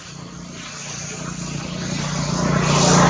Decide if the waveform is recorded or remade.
recorded